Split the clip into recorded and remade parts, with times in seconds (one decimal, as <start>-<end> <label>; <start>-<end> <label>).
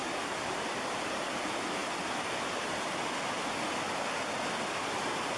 0.0-5.4 recorded